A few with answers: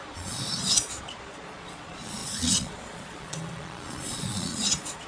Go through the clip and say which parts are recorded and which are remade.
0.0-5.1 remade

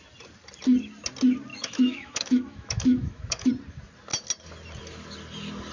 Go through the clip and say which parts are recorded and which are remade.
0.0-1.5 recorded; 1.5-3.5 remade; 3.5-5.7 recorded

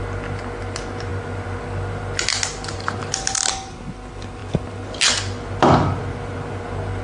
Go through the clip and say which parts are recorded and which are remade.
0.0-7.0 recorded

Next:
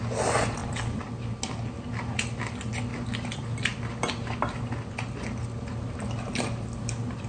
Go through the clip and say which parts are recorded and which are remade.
0.0-7.3 recorded

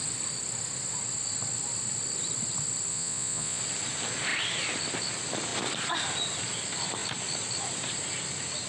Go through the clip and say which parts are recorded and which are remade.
0.0-2.9 recorded; 2.9-3.6 remade; 3.6-8.7 recorded